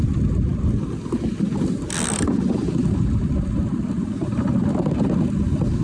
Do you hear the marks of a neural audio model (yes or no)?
no